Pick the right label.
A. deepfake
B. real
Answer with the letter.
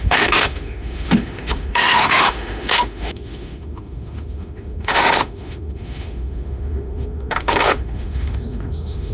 A